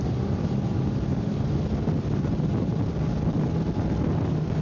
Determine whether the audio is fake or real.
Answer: real